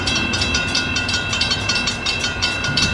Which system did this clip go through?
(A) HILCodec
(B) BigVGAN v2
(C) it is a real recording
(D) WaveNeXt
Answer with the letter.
B